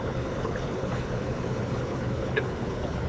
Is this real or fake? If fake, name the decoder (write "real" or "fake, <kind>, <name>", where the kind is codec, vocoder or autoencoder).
fake, codec, HILCodec